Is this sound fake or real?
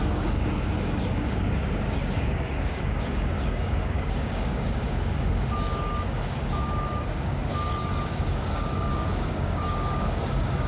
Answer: fake